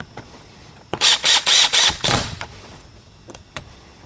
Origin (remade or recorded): remade